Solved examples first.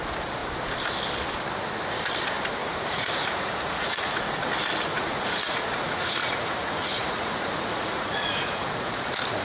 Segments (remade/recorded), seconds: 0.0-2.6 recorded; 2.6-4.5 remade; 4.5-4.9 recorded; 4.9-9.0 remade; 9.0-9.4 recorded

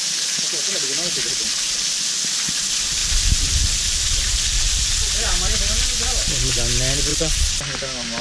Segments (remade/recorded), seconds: 0.0-7.1 recorded; 7.1-7.6 remade; 7.6-8.2 recorded

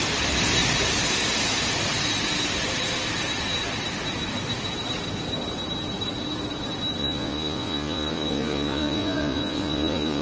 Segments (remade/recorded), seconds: 0.0-7.0 recorded; 7.0-10.2 remade

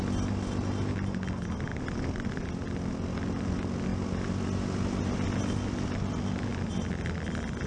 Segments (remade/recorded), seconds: 0.0-7.7 recorded